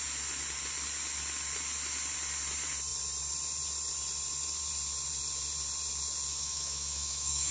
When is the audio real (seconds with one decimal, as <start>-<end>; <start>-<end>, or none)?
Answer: 0.0-6.3